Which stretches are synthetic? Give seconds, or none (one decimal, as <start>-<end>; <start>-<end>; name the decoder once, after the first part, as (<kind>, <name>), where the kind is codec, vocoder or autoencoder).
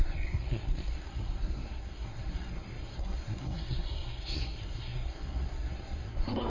0.0-6.5 (codec, SNAC)